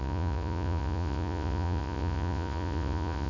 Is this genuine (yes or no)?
no